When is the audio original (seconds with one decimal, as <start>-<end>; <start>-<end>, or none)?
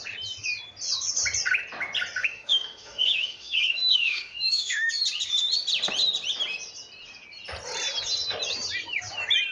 0.0-2.2; 4.9-9.5